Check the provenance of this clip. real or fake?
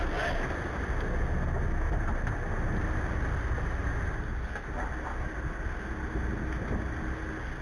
real